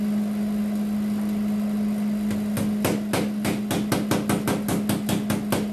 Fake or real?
real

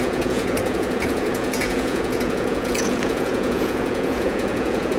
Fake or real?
fake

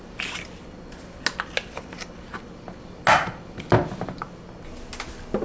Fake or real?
real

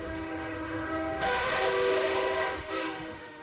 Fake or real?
fake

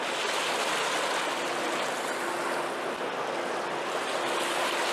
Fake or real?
real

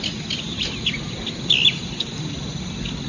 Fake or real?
real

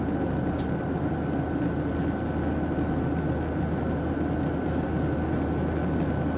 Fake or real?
real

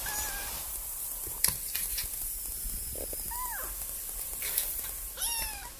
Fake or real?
fake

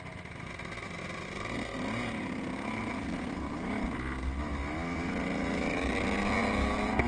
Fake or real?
real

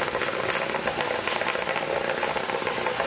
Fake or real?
real